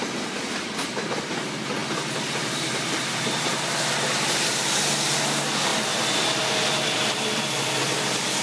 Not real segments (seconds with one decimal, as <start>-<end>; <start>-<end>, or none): 1.8-4.5; 5.7-8.4